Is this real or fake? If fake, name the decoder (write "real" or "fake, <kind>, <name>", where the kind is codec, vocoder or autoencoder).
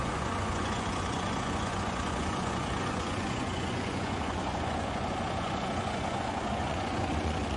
fake, vocoder, Vocos